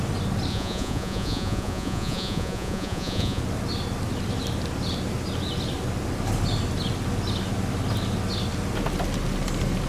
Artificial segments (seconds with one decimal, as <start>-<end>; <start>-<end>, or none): 0.5-3.4